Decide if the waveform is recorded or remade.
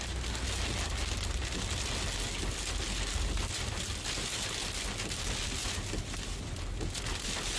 recorded